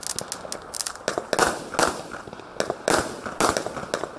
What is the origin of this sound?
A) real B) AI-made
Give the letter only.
A